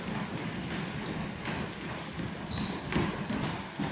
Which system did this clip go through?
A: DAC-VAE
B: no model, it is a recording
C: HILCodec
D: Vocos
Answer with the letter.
B